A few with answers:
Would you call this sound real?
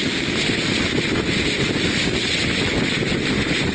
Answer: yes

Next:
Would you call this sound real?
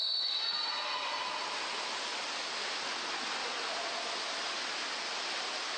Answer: yes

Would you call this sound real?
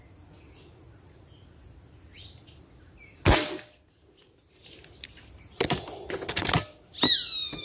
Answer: yes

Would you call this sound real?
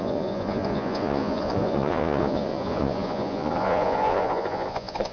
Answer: no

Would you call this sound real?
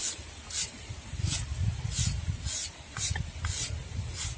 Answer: yes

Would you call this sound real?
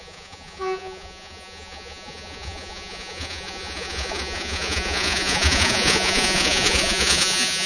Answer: no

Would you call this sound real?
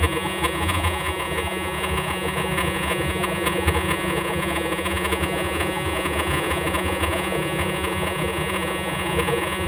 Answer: no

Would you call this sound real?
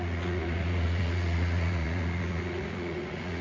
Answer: no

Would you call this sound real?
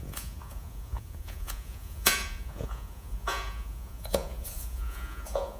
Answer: no